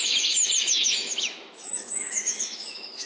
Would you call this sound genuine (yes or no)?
no